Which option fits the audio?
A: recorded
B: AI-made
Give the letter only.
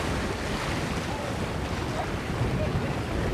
A